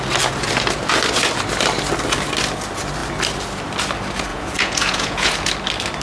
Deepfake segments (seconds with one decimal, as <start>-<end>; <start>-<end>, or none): 4.3-5.5